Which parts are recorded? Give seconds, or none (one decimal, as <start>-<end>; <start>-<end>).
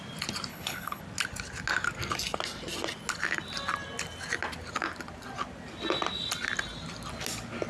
0.0-0.5; 1.0-7.7